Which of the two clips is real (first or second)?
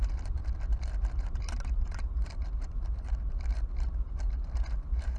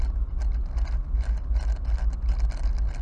second